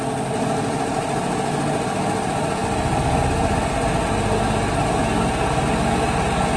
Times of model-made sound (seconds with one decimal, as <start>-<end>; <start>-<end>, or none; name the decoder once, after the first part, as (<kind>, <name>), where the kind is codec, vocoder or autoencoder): none